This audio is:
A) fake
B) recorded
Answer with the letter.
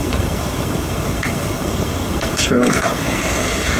A